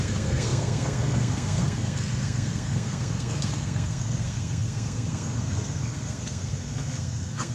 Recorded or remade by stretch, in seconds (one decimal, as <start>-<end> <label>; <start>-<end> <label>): 0.0-7.5 remade